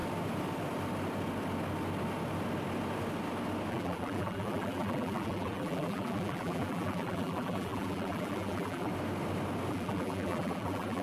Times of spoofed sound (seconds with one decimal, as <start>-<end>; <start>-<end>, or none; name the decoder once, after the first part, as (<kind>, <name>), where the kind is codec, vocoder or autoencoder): 3.7-8.9 (vocoder, BigVGAN v2); 9.7-11.0